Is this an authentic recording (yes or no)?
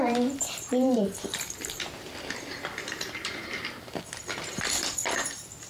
no